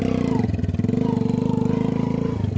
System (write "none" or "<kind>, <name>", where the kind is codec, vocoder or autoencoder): none